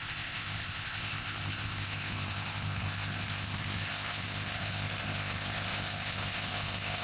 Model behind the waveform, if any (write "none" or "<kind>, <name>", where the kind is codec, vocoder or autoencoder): codec, ZipCodec